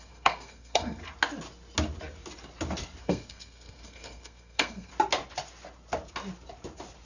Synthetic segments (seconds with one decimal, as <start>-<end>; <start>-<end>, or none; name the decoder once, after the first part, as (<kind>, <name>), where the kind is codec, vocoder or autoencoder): 0.0-1.0 (codec, SNAC); 3.0-4.9